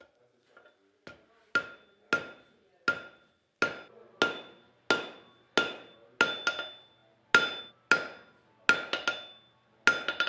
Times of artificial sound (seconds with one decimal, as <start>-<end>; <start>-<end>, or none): none